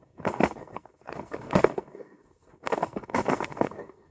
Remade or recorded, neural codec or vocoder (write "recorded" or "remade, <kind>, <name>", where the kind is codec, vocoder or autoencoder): remade, codec, SNAC